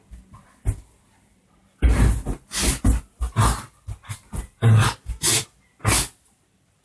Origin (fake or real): real